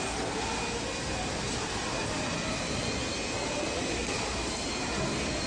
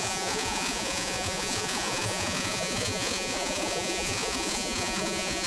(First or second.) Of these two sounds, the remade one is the second